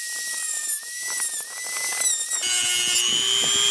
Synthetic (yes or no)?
no